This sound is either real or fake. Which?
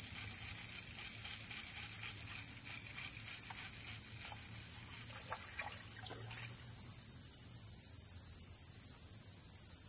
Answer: real